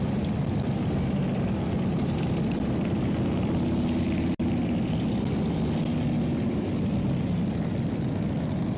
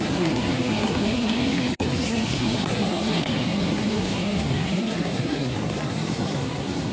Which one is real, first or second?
first